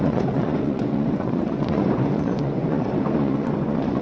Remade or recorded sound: remade